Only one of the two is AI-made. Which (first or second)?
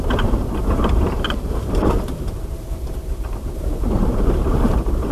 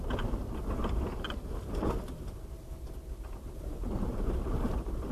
first